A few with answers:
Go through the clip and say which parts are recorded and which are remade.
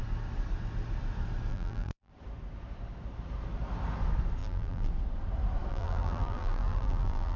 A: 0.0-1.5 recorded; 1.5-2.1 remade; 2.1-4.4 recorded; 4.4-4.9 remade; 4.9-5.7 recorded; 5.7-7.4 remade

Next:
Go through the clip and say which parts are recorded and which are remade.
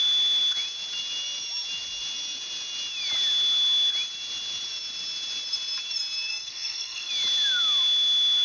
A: 0.0-6.3 recorded; 6.3-7.1 remade; 7.1-8.4 recorded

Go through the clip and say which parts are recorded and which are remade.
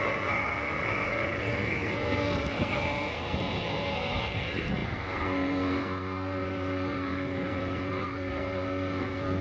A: 0.0-9.4 remade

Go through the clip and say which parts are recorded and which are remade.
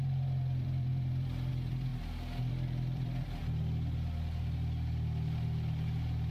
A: 0.0-1.9 remade; 1.9-2.5 recorded; 2.5-3.4 remade; 3.4-6.3 recorded